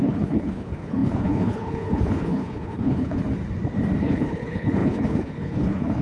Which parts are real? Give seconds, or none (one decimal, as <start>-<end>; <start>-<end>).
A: 3.2-4.0

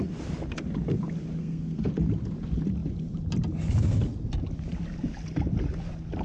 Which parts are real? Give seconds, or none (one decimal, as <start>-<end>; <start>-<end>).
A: 0.0-1.4; 1.9-6.2

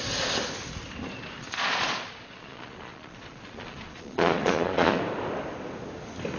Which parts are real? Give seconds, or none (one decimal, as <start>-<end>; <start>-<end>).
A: 0.0-1.4; 5.0-6.4

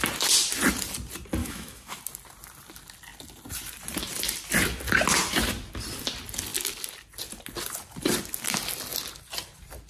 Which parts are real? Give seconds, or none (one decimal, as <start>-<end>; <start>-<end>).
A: 0.0-1.4; 2.0-9.9